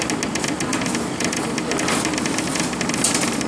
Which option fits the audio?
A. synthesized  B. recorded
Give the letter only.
B